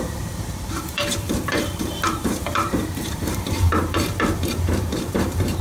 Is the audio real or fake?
fake